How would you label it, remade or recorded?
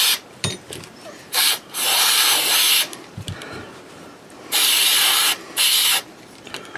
remade